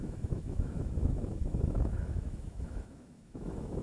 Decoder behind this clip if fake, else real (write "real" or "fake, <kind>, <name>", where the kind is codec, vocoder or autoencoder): fake, autoencoder, DAC-VAE